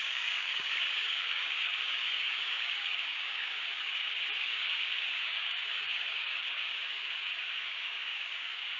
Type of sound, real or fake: fake